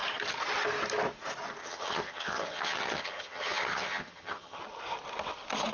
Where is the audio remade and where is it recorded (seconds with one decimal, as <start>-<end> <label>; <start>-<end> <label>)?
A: 0.0-1.6 recorded; 1.6-4.6 remade; 4.6-5.7 recorded